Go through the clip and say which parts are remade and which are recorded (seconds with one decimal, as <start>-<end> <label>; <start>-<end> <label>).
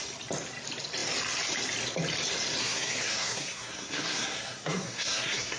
0.0-2.6 recorded; 2.6-5.6 remade